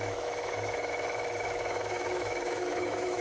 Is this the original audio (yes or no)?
no